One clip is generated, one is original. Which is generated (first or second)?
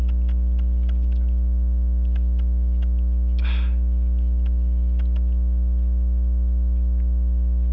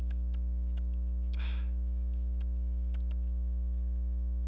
second